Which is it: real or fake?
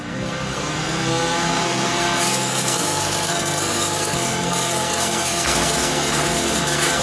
fake